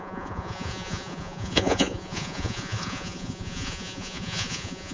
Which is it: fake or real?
fake